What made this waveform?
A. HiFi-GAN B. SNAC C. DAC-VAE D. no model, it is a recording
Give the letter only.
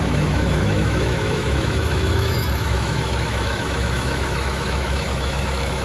C